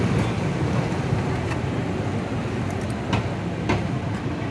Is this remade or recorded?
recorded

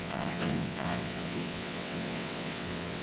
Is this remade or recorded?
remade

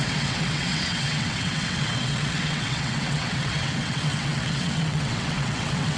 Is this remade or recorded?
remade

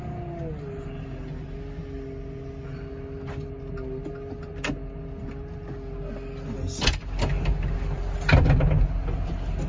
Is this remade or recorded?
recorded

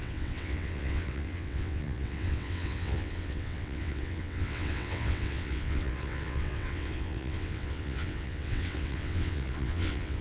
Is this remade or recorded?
remade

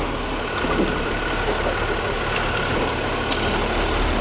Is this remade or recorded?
recorded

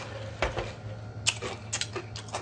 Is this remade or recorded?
recorded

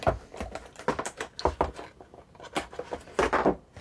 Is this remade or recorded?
recorded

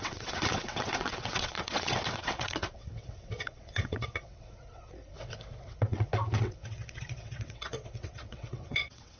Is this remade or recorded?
remade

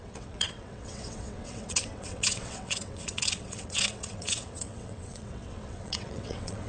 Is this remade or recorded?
remade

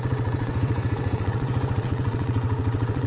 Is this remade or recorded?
remade